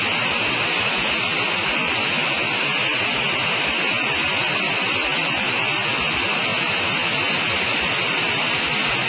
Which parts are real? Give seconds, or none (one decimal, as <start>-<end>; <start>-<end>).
0.0-9.1